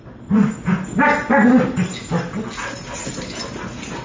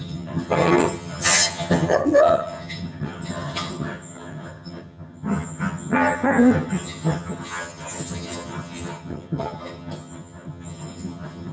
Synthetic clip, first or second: second